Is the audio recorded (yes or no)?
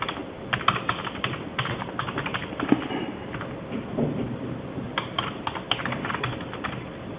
yes